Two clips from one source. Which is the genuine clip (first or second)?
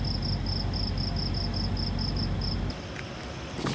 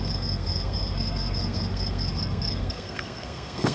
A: first